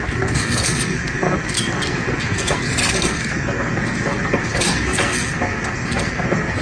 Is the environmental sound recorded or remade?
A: remade